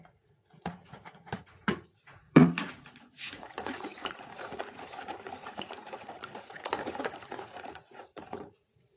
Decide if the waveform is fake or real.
fake